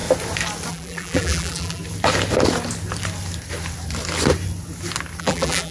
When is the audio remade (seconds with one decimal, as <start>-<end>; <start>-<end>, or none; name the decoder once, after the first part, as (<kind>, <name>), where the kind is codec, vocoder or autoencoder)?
0.7-1.8 (vocoder, BigVGAN v2); 5.2-5.7